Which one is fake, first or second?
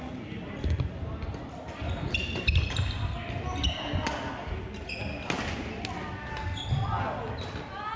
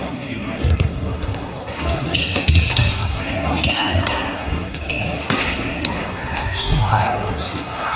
second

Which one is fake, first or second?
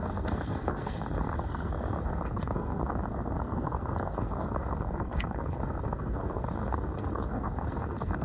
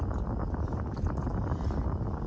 first